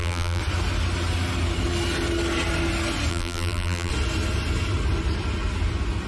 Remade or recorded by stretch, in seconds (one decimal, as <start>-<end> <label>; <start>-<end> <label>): 0.0-0.4 remade; 0.4-3.1 recorded; 3.1-3.9 remade; 3.9-6.1 recorded